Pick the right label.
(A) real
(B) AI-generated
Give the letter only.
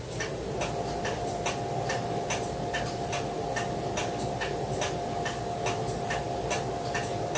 A